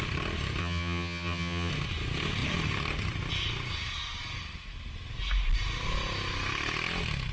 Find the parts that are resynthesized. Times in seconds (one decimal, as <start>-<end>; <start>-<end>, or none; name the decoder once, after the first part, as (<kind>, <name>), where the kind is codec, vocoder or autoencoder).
0.6-1.7 (vocoder, HiFi-GAN)